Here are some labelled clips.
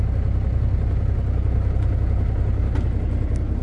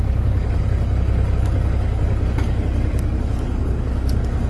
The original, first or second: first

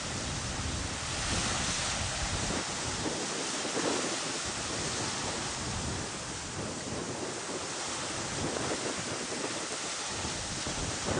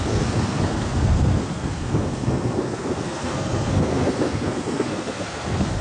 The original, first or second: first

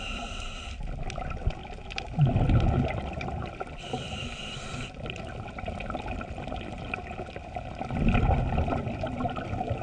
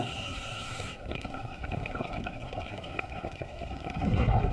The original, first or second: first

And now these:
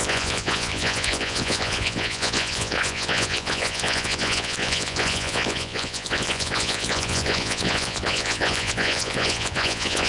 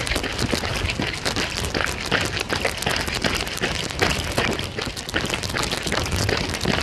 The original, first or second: second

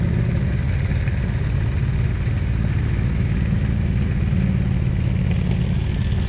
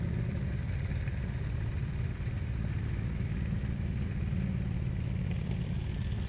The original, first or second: first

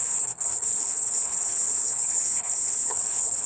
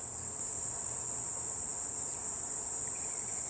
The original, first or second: second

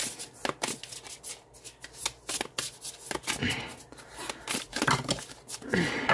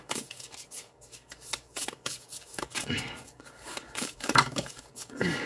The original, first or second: first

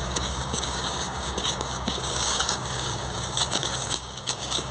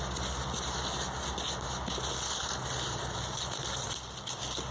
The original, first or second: second